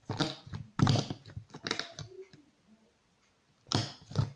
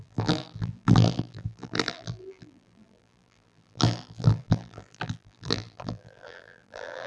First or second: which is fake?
second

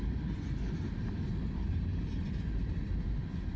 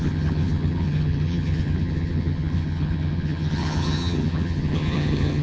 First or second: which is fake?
second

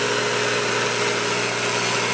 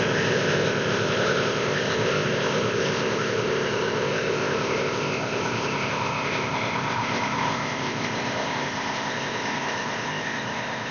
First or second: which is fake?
second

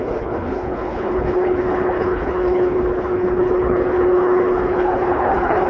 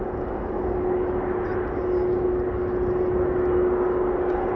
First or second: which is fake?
first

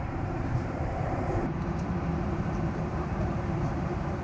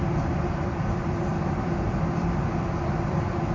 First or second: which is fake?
first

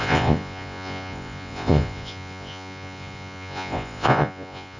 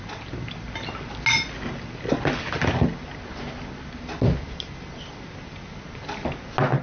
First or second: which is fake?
first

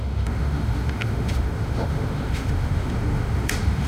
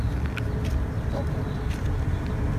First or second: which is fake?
first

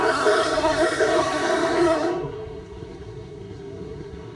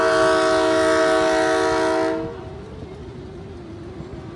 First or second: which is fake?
first